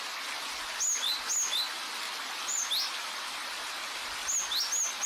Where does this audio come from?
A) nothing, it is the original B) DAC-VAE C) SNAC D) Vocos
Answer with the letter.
A